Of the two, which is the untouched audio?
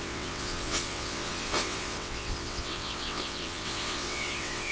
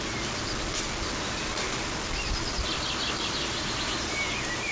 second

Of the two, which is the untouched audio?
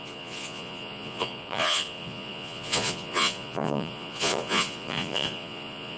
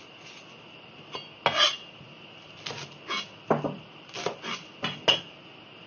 second